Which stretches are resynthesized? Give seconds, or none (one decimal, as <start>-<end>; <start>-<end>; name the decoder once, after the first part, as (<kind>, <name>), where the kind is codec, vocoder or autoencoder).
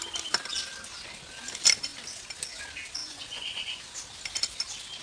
3.0-3.8 (vocoder, Vocos)